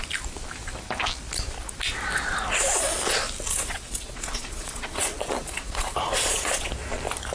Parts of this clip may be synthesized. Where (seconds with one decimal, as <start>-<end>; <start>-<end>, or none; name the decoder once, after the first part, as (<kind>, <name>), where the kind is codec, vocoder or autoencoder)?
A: 3.5-6.7 (vocoder, Vocos)